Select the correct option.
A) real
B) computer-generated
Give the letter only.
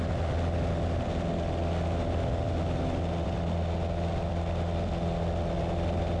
A